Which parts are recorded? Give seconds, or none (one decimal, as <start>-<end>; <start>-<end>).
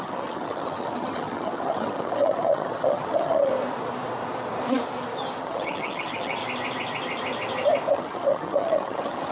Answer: 3.5-5.4; 6.4-7.9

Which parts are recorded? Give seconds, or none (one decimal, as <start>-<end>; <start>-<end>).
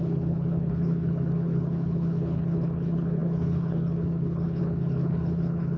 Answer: none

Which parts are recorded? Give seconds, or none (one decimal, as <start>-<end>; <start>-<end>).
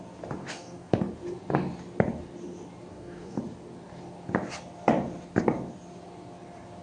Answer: 0.0-0.4; 0.9-2.9; 3.4-6.8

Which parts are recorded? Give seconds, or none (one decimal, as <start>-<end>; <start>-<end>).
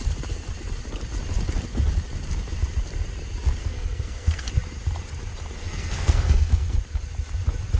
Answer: 0.0-3.6; 4.5-5.6; 6.8-7.8